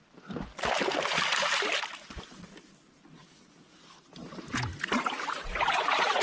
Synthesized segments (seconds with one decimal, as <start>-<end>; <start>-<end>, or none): none